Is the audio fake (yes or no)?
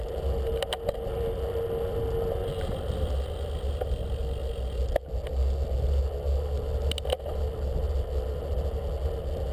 no